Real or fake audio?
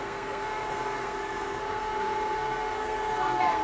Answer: fake